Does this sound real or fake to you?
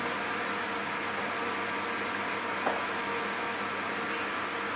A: real